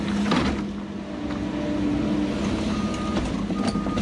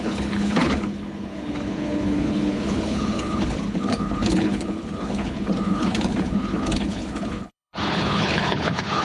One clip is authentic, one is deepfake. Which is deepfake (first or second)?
second